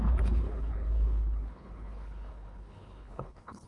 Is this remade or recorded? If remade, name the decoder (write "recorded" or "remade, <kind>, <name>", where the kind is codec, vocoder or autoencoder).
remade, codec, HILCodec